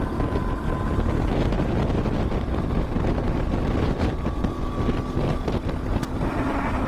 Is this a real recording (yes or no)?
yes